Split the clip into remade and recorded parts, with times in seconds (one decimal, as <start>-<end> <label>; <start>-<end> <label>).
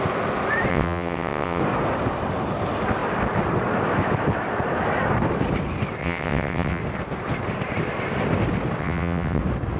0.0-0.7 recorded; 0.7-1.6 remade; 1.6-6.0 recorded; 6.0-6.8 remade; 6.8-8.8 recorded; 8.8-9.4 remade; 9.4-9.8 recorded